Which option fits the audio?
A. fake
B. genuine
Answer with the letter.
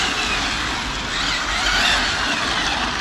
B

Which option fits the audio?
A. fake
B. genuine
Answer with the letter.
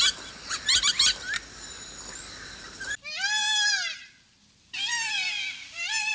B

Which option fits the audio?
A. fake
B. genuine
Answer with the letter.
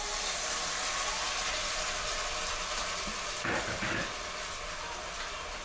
B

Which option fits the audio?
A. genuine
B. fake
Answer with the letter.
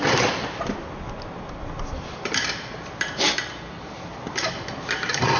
A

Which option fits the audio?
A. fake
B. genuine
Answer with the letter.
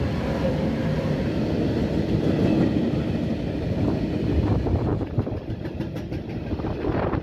B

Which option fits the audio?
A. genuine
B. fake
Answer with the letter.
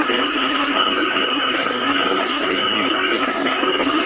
B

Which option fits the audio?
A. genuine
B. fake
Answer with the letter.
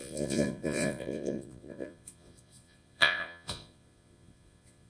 B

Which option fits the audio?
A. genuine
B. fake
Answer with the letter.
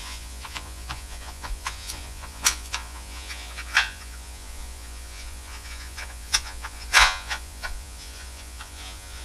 B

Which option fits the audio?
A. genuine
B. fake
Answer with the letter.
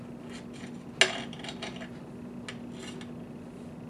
A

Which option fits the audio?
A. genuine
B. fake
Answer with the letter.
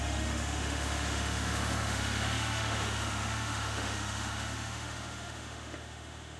B